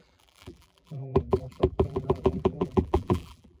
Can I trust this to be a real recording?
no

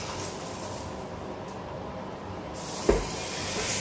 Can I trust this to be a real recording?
yes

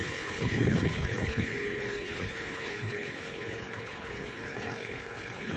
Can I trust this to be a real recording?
no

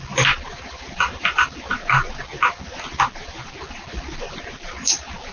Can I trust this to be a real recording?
yes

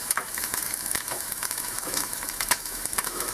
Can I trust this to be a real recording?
no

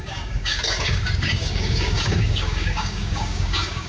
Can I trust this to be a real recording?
no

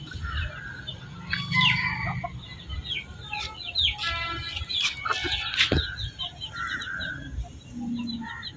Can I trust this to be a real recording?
yes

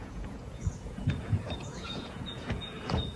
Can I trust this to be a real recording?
no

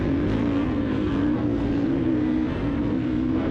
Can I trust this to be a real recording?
no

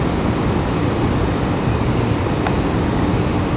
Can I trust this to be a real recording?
yes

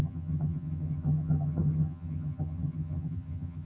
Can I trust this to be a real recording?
no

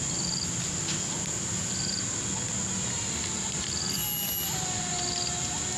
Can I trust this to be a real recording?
yes